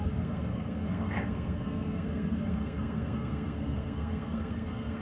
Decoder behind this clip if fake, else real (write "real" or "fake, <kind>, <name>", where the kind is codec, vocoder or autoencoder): fake, codec, SNAC